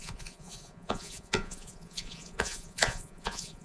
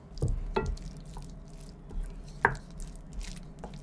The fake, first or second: first